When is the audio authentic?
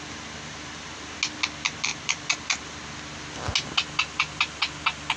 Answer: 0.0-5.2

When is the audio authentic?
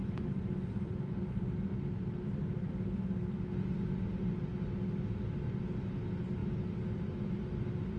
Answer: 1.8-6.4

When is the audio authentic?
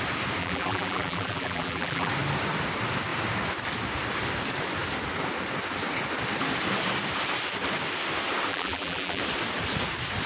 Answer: 0.0-0.4; 2.1-8.5; 9.2-10.3